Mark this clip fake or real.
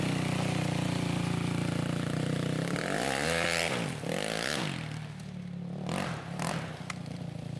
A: real